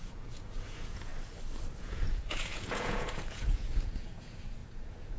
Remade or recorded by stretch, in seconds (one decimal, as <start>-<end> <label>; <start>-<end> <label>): 0.0-1.1 remade; 1.1-1.8 recorded; 1.8-5.2 remade